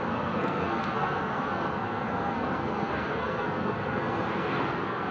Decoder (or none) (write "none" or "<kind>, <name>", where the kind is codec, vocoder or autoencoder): codec, SNAC